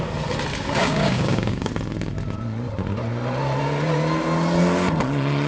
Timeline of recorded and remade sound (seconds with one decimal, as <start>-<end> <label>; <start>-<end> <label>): 0.0-0.8 recorded; 0.8-1.7 remade; 1.7-5.5 recorded